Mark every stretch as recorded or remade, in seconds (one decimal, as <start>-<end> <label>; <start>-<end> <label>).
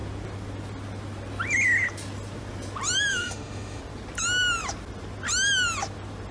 0.0-3.1 recorded; 3.1-3.8 remade; 3.8-6.3 recorded